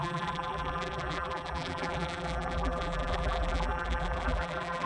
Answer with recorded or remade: remade